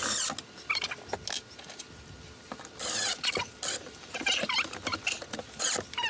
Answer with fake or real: real